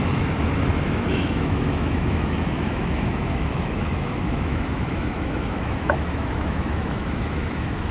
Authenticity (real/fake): fake